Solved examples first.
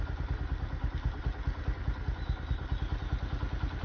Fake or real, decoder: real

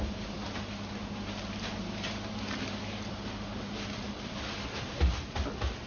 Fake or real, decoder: real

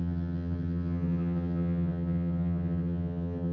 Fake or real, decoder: fake, vocoder, HiFi-GAN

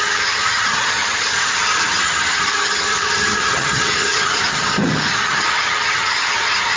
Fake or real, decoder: fake, vocoder, HiFi-GAN